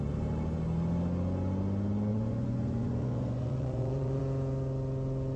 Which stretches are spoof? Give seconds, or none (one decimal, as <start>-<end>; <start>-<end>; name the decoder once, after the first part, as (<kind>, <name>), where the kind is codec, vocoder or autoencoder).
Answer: 2.1-4.2 (vocoder, Vocos)